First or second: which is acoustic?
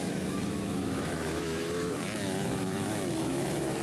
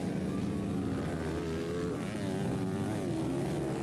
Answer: second